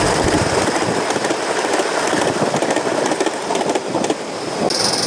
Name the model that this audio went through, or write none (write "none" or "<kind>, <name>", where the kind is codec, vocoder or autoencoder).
none